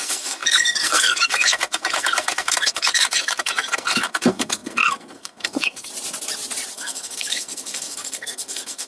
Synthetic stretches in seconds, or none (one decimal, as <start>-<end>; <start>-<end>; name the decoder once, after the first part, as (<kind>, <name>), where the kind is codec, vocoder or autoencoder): 0.0-5.9 (codec, SNAC); 6.7-8.9